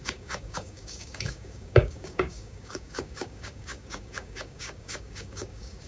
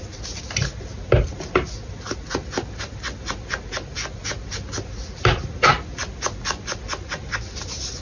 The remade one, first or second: first